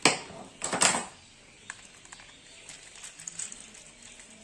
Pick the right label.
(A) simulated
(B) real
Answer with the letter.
B